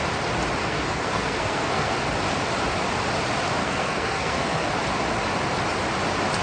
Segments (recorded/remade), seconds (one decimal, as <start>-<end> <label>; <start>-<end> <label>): 0.0-0.6 recorded; 0.6-2.0 remade; 2.0-3.6 recorded; 3.6-4.7 remade; 4.7-6.4 recorded